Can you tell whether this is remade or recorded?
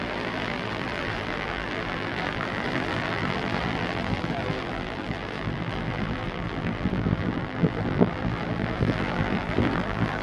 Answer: remade